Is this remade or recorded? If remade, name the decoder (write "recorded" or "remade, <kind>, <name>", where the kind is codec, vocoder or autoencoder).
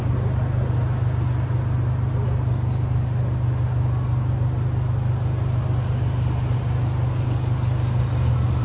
recorded